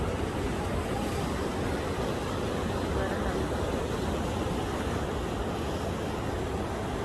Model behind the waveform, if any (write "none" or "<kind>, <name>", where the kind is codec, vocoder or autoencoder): none